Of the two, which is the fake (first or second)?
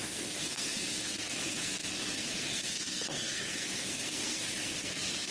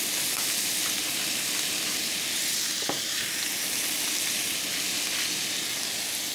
first